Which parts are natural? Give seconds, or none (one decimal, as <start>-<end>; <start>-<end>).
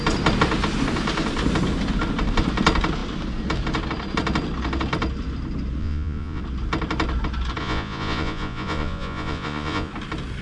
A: 0.0-5.8; 6.4-7.6; 9.9-10.4